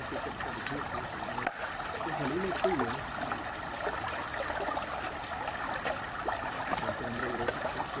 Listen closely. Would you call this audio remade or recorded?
recorded